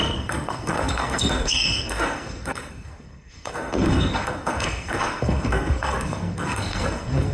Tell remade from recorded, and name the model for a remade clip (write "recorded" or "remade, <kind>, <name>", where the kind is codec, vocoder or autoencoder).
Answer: remade, codec, SNAC